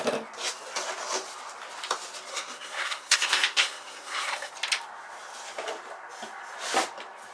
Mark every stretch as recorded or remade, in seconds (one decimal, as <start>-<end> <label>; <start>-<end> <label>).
0.0-2.3 recorded; 2.3-4.5 remade; 4.5-7.3 recorded